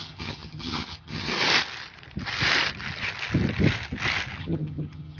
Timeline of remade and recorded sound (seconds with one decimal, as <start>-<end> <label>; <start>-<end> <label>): 0.0-1.3 remade; 1.3-4.4 recorded; 4.4-5.2 remade